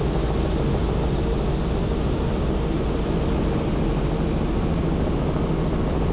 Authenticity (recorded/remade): recorded